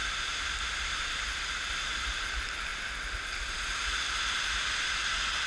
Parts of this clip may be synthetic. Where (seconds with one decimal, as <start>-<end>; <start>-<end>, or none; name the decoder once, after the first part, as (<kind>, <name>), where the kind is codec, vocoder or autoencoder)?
1.7-2.7 (vocoder, BigVGAN v2)